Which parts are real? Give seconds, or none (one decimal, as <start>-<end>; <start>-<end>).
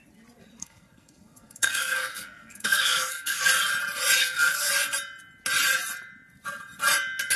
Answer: 0.0-0.6; 3.4-4.2; 4.7-7.4